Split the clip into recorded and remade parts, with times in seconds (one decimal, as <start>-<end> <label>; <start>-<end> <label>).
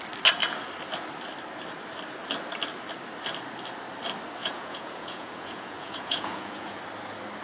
0.0-4.4 recorded; 4.4-6.8 remade; 6.8-7.4 recorded